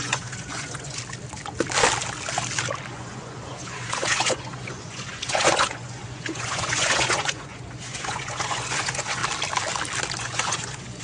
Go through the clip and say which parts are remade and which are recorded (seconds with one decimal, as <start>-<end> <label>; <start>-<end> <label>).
0.0-1.0 remade; 1.0-2.9 recorded; 2.9-9.2 remade; 9.2-10.2 recorded; 10.2-11.0 remade